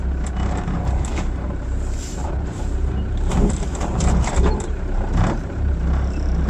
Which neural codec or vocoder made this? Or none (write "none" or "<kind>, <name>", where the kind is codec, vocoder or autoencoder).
vocoder, BigVGAN v2